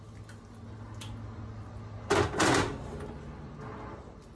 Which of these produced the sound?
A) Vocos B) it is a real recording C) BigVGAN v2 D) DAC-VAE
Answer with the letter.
B